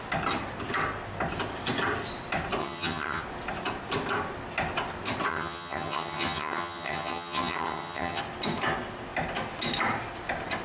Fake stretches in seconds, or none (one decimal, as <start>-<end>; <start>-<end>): 2.6-3.2; 5.3-8.2